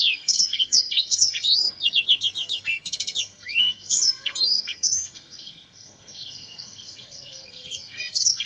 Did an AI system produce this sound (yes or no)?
yes